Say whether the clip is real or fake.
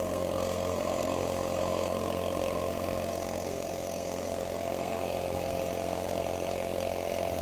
fake